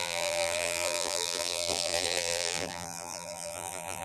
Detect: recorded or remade remade